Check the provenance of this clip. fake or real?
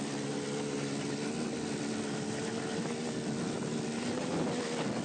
real